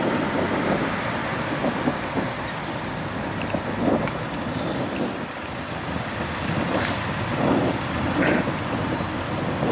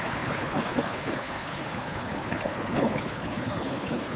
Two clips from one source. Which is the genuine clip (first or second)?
first